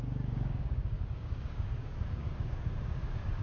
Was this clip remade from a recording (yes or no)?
yes